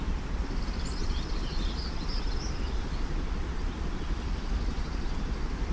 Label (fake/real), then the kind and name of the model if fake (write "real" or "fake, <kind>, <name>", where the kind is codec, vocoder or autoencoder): real